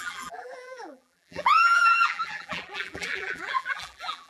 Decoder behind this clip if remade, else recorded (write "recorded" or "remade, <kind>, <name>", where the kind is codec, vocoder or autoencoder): remade, vocoder, BigVGAN v2